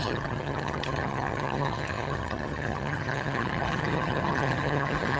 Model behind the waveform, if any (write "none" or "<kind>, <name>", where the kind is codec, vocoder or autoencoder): vocoder, HiFi-GAN